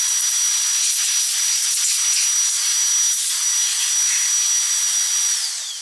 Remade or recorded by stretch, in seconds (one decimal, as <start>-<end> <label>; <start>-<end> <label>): 0.0-5.8 recorded